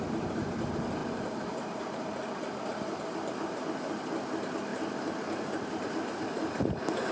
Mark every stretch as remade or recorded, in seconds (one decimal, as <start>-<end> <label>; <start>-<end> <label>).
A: 0.0-1.0 recorded; 1.0-2.0 remade; 2.0-7.1 recorded

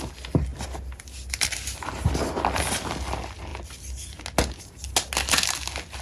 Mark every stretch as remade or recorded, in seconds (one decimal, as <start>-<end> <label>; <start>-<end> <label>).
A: 0.0-6.0 recorded

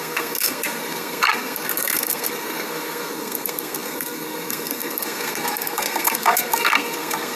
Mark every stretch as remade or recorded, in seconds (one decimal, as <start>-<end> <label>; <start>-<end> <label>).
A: 0.0-7.4 remade

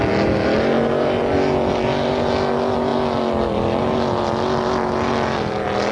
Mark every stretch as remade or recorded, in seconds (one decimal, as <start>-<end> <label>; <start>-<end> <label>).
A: 0.0-5.9 recorded